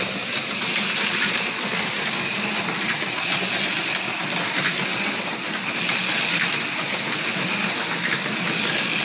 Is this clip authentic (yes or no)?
yes